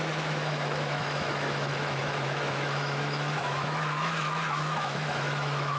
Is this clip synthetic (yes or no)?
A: yes